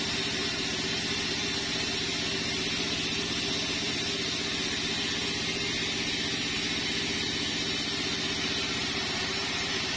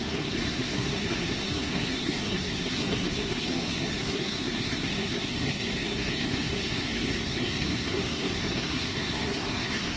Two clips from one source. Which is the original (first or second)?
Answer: first